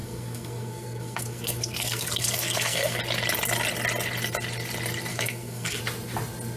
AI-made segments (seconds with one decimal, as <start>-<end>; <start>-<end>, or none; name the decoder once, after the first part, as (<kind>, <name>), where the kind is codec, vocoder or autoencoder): 0.0-3.0 (codec, SNAC); 5.1-5.8